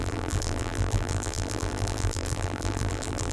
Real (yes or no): no